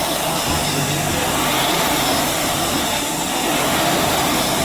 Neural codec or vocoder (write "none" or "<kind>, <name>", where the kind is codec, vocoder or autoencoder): none